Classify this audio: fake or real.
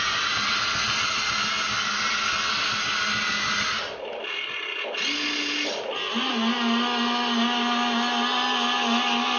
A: real